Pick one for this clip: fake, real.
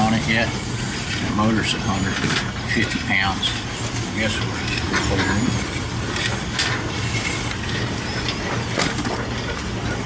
real